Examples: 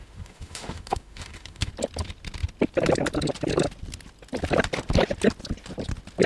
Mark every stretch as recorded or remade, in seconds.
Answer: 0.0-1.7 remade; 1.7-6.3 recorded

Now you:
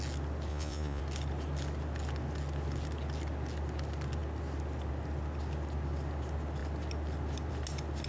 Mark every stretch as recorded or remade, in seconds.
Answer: 0.0-0.5 recorded; 0.5-1.0 remade; 1.0-8.1 recorded

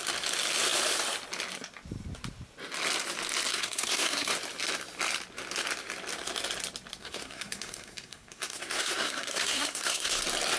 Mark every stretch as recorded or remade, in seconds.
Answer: 0.0-3.5 recorded; 3.5-4.3 remade; 4.3-7.0 recorded; 7.0-10.2 remade; 10.2-10.6 recorded

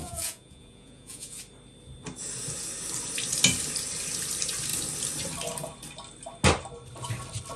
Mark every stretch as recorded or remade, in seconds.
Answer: 0.0-1.4 remade; 1.4-7.6 recorded